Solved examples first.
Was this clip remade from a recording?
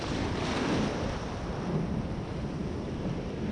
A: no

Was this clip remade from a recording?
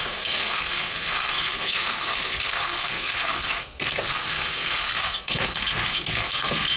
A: yes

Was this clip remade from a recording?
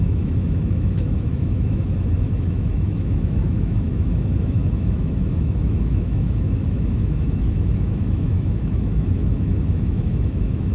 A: yes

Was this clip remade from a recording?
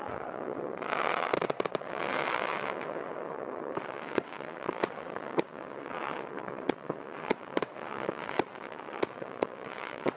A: yes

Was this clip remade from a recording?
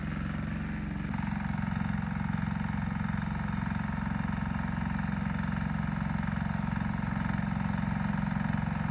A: no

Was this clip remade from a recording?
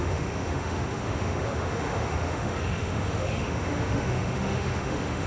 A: yes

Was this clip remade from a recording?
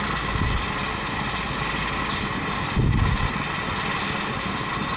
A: no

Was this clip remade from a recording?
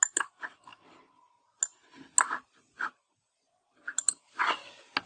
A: no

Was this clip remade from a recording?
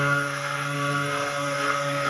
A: yes